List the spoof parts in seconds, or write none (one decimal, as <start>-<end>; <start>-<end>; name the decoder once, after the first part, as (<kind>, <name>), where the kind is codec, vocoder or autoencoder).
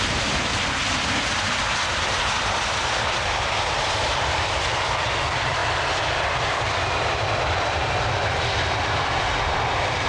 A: 0.0-0.5 (vocoder, BigVGAN v2); 2.4-5.6; 6.2-10.1